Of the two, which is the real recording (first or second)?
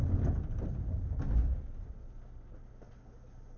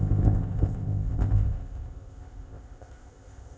first